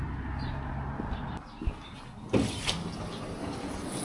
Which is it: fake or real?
real